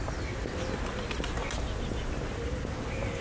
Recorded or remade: recorded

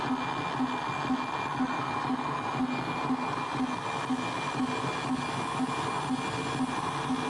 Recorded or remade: recorded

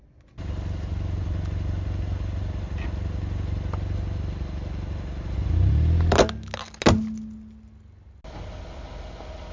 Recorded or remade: recorded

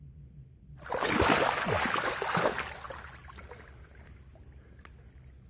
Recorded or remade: recorded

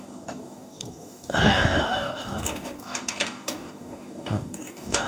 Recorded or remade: remade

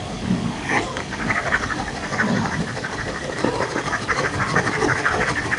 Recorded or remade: remade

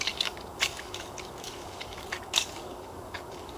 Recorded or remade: remade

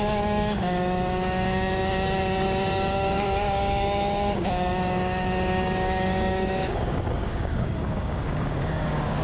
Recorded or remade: remade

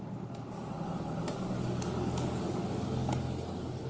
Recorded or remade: remade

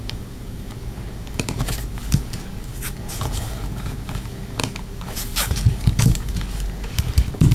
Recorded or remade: remade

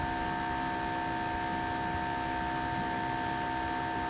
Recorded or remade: recorded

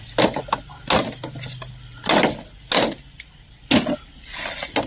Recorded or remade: recorded